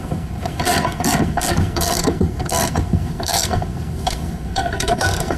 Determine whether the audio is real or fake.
fake